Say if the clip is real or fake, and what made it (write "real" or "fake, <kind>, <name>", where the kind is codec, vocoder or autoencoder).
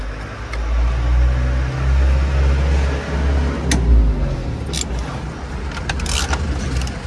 real